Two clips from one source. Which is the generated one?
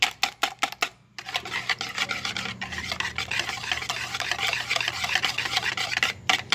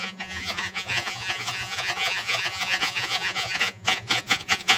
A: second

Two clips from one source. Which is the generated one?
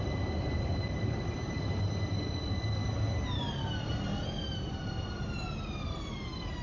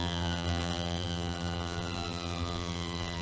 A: second